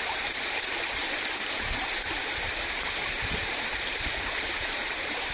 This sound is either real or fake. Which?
fake